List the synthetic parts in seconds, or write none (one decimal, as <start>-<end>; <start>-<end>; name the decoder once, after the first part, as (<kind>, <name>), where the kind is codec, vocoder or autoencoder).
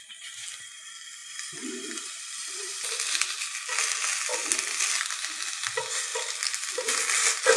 1.2-3.0 (vocoder, BigVGAN v2); 6.1-6.7